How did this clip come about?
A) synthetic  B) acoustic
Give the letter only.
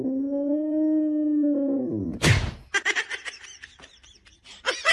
B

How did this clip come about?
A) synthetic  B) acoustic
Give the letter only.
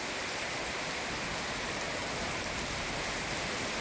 B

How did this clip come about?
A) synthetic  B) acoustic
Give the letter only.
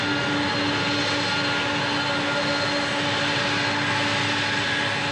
B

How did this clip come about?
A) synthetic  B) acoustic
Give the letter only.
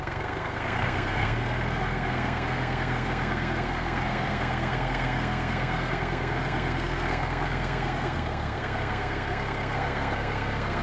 A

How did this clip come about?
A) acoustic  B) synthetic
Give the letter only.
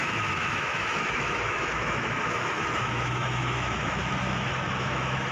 B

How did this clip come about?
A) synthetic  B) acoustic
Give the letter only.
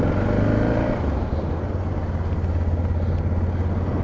B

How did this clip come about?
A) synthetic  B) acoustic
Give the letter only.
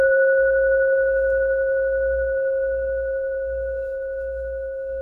A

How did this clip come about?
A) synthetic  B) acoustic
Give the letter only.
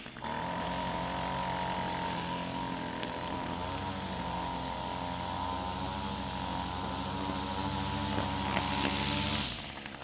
B